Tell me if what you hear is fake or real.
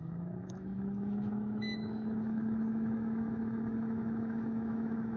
fake